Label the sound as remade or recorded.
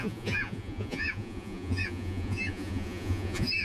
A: remade